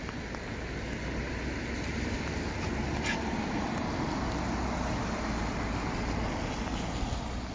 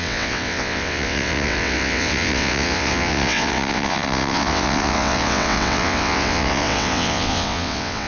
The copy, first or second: second